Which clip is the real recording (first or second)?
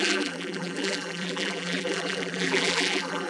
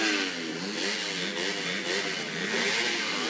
second